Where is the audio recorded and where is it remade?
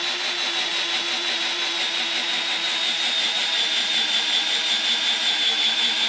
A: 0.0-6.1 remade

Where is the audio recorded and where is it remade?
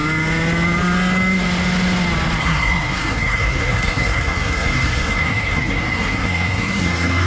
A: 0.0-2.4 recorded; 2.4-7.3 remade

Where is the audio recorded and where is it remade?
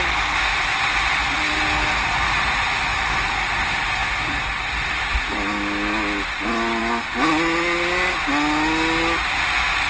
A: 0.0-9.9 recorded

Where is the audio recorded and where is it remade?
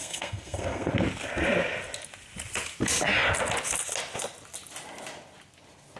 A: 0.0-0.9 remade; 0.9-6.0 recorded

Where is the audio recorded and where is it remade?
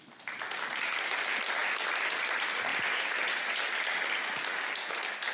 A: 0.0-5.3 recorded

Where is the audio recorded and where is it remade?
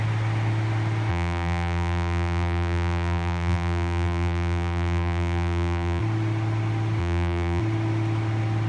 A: 0.0-1.1 recorded; 1.1-6.0 remade; 6.0-7.0 recorded; 7.0-7.6 remade; 7.6-8.7 recorded